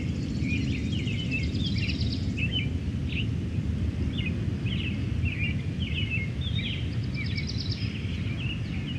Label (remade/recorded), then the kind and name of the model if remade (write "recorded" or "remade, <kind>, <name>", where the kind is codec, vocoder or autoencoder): recorded